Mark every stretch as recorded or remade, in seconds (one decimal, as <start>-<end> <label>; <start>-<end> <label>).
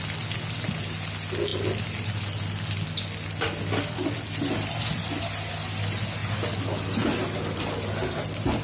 0.0-8.6 recorded